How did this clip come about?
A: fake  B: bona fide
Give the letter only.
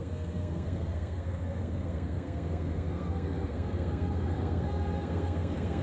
A